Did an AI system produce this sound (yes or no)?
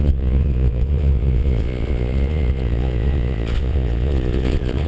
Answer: yes